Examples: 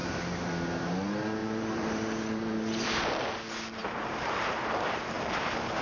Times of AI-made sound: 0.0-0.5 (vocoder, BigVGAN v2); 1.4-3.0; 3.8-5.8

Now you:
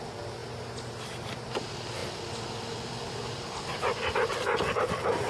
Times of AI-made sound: 0.4-1.5 (vocoder, BigVGAN v2)

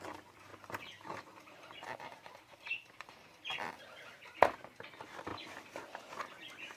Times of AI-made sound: 0.5-3.4 (vocoder, BigVGAN v2)

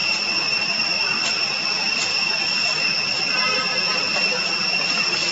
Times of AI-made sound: 0.0-0.8 (vocoder, BigVGAN v2)